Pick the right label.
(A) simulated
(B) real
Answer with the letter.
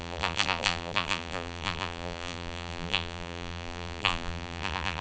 A